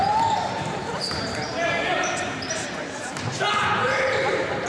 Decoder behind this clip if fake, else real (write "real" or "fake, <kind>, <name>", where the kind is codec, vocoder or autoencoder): fake, vocoder, BigVGAN v2